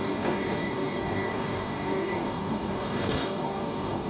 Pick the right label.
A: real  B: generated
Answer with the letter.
B